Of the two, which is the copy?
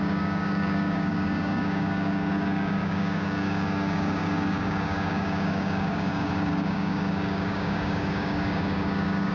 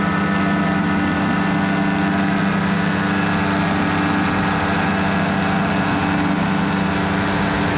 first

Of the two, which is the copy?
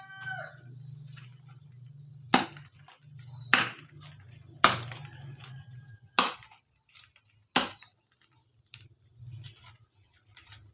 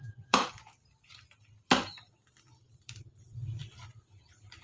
second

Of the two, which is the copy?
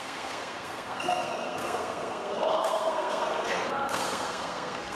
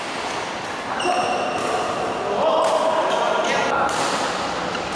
first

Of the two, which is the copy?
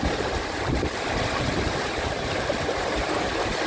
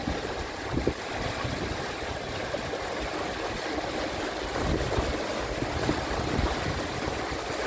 first